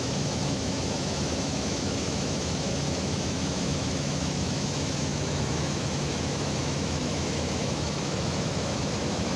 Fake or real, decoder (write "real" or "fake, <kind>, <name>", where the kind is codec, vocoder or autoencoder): fake, autoencoder, DAC-VAE